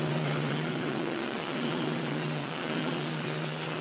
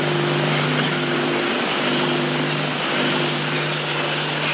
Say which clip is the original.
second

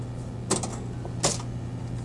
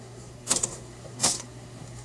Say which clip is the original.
first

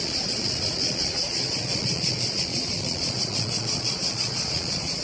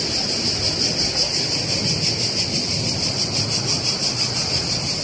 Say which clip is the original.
second